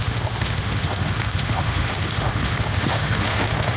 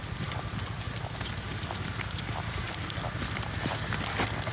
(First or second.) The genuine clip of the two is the second